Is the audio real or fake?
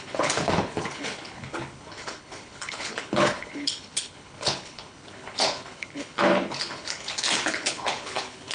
fake